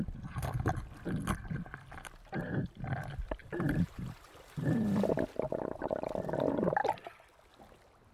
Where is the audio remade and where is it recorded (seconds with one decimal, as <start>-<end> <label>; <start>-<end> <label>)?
0.0-3.4 recorded; 3.4-5.1 remade; 5.1-8.1 recorded